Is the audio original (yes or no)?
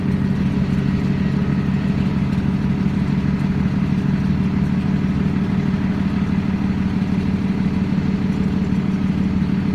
yes